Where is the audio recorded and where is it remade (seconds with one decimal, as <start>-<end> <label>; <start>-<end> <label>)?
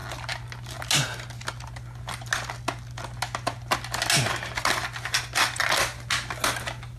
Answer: 0.0-7.0 recorded